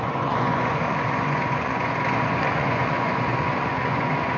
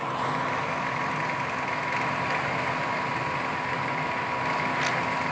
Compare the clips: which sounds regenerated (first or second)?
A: first